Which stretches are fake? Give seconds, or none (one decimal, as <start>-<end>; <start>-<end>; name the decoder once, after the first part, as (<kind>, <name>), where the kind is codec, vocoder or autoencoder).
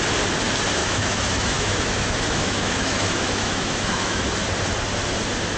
0.8-4.2 (autoencoder, DAC-VAE)